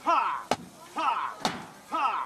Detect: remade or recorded recorded